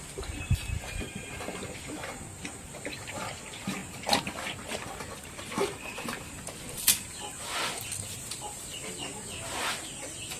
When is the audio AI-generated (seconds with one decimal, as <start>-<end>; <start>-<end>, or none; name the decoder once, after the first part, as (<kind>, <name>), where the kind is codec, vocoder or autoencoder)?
none